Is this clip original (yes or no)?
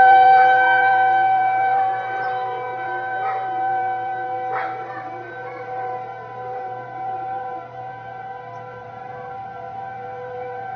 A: no